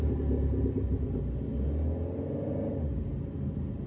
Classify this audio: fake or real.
real